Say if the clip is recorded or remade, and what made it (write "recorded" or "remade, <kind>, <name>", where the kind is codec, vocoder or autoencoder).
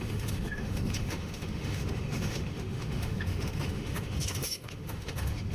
remade, autoencoder, DAC-VAE